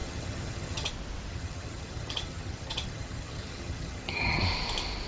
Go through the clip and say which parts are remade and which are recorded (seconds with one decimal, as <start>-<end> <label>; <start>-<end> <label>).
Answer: 0.0-0.9 remade; 0.9-1.3 recorded; 1.3-4.4 remade; 4.4-5.1 recorded